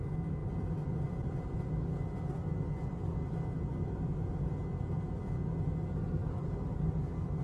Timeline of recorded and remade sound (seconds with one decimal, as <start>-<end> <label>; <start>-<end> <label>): 0.0-0.4 recorded; 0.4-1.6 remade; 1.6-6.2 recorded; 6.2-6.9 remade; 6.9-7.4 recorded